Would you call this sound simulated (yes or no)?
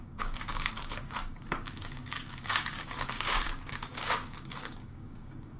yes